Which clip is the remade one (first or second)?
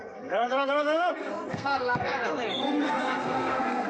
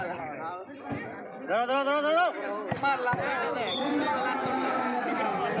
first